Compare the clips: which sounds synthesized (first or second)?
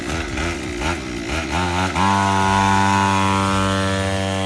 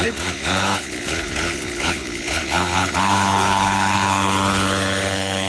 second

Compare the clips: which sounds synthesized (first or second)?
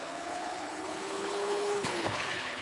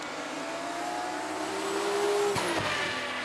first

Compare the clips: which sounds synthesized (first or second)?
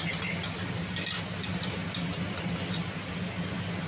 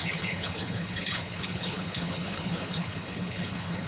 second